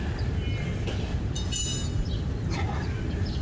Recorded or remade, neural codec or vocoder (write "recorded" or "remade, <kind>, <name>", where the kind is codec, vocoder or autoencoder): recorded